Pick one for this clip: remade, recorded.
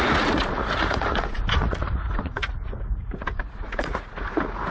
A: remade